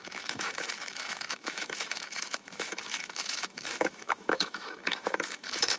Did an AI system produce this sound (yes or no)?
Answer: yes